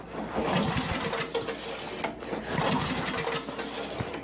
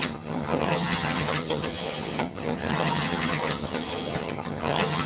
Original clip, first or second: first